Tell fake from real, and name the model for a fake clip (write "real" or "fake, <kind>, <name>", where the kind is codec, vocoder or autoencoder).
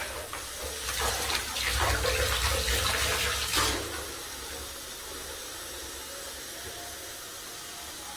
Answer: real